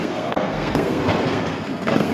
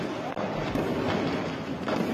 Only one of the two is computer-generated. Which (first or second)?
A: first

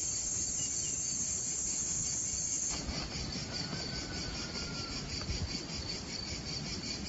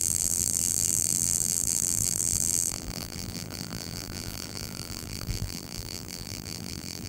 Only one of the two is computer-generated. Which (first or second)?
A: second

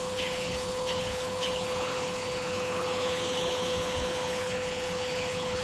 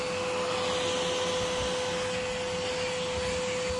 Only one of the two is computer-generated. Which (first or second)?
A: first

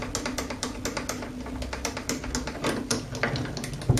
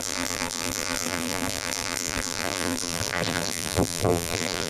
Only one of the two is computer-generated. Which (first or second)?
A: second